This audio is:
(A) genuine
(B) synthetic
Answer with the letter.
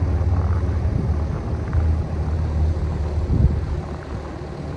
A